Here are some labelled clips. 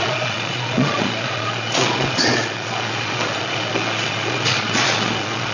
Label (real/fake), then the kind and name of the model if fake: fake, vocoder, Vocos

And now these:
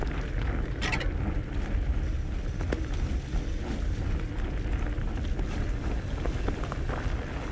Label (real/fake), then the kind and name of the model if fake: real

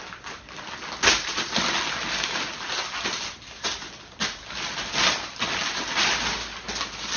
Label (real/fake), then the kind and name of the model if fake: real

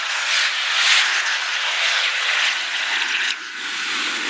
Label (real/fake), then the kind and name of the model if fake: fake, vocoder, Vocos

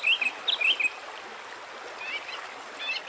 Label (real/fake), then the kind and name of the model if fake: real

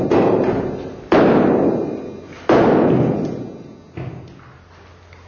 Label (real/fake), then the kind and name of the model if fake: real